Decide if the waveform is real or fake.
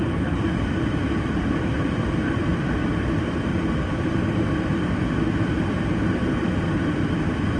fake